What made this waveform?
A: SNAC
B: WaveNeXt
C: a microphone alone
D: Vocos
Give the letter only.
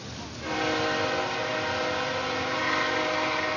C